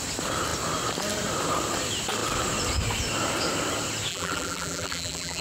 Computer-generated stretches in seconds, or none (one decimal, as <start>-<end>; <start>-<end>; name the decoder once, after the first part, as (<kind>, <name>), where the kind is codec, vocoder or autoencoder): 4.1-5.4 (vocoder, BigVGAN v2)